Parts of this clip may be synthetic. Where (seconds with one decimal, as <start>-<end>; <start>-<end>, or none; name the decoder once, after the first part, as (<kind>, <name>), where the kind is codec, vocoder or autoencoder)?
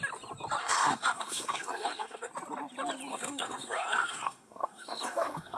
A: 0.6-2.3 (codec, SNAC); 3.1-5.6